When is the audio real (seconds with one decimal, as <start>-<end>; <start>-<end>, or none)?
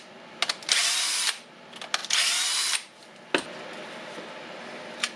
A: 0.0-5.2